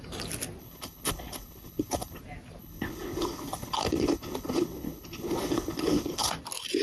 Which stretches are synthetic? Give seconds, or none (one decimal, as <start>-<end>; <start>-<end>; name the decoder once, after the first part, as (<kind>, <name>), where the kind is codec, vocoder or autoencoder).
0.6-2.2 (codec, HILCodec); 2.6-6.3